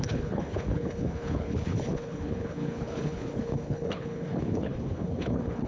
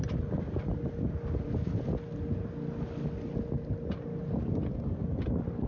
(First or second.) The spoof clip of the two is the first